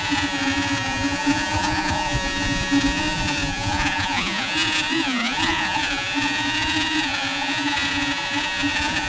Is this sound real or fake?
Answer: fake